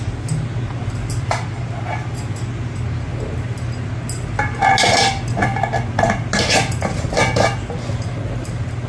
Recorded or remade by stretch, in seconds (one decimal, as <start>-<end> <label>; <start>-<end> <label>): 0.0-0.5 recorded; 0.5-1.3 remade; 1.3-8.9 recorded